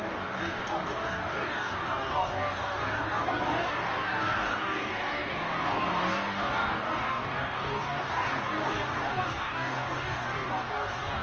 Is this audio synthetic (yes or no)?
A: yes